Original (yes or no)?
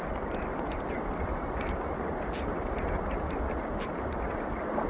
yes